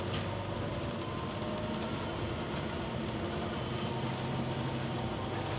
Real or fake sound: real